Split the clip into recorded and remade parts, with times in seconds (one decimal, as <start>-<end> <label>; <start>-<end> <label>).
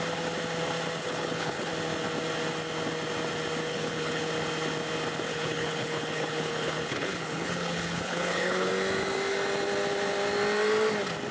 0.0-1.0 recorded; 1.0-1.7 remade; 1.7-3.7 recorded; 3.7-4.3 remade; 4.3-5.3 recorded; 5.3-8.7 remade; 8.7-11.3 recorded